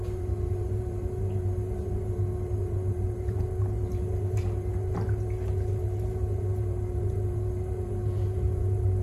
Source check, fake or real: fake